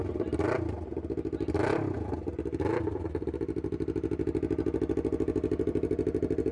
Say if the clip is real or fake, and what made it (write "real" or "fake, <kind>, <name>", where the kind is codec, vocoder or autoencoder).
real